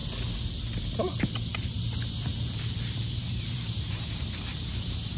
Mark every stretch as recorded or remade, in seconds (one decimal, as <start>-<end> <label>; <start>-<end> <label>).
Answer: 0.0-1.6 recorded; 1.6-5.2 remade